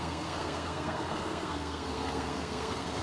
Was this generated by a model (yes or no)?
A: yes